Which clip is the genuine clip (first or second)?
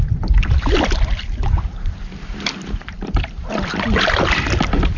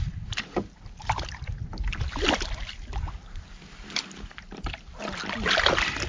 second